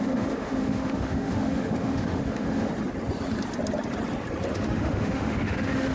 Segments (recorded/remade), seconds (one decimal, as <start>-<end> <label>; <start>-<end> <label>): 0.0-2.7 remade; 2.7-4.5 recorded; 4.5-5.9 remade